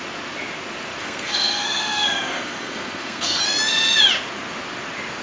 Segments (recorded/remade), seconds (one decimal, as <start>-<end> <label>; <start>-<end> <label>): 0.0-1.0 recorded; 1.0-3.4 remade; 3.4-5.2 recorded

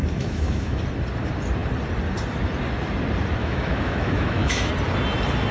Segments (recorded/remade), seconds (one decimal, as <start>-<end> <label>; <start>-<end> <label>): 0.0-0.8 remade; 0.8-3.4 recorded; 3.4-4.7 remade; 4.7-5.5 recorded